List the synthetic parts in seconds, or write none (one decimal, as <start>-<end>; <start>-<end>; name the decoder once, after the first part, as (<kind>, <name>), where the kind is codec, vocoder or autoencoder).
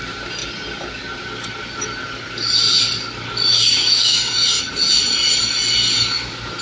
3.5-4.6 (codec, DAC)